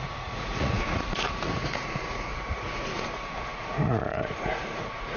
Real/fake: fake